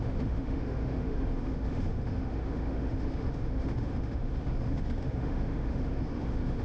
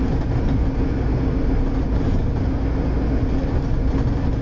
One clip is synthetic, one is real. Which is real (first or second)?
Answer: second